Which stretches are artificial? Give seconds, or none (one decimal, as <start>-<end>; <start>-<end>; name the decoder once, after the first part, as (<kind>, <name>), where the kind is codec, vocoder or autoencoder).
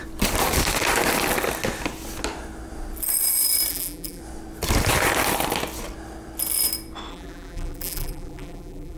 3.7-4.2 (vocoder, BigVGAN v2); 7.1-9.0